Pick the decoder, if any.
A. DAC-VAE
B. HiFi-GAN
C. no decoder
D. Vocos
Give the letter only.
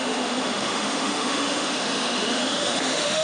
A